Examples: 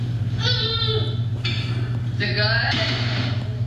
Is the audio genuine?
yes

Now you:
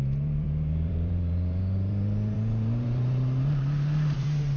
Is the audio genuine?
no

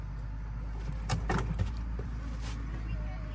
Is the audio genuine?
yes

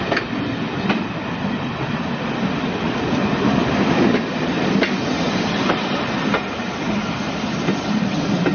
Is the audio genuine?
no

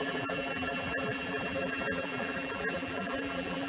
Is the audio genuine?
no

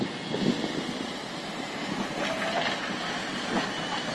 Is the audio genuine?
yes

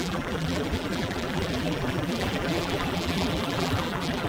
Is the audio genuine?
no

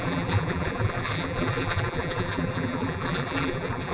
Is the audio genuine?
no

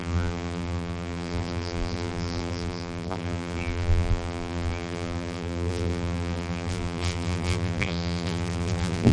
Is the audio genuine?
no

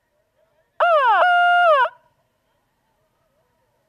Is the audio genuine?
yes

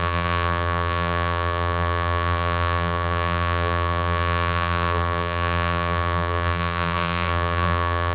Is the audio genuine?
no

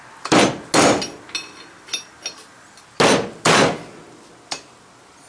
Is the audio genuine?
yes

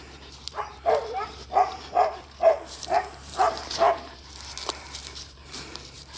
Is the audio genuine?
no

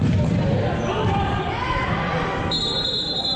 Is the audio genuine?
no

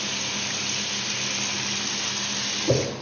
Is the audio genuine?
yes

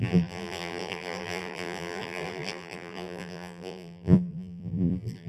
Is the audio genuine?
no